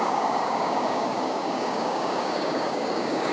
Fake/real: fake